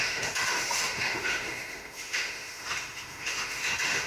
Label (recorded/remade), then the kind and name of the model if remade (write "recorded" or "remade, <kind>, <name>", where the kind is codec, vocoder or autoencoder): remade, autoencoder, DAC-VAE